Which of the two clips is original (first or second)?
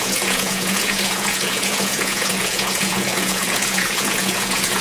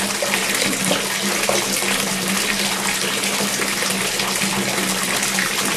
second